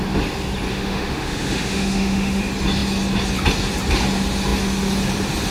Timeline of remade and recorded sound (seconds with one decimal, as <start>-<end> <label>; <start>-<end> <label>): 0.0-0.7 recorded; 0.7-2.4 remade; 2.4-5.5 recorded